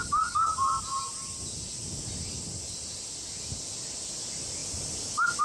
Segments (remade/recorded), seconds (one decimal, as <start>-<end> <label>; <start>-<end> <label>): 0.0-5.4 recorded